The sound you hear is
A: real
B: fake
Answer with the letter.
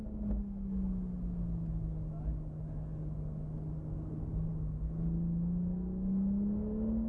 A